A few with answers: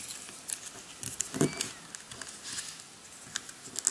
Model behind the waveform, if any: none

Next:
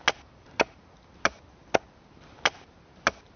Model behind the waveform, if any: none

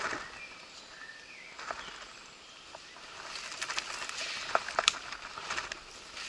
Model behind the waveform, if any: none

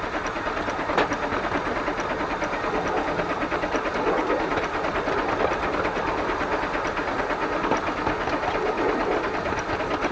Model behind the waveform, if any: none